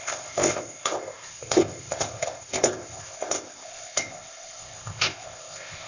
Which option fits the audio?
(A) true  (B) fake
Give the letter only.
B